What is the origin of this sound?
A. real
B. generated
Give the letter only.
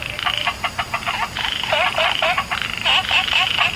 A